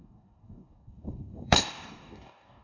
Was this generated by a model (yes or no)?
yes